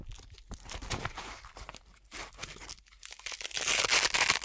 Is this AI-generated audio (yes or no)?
no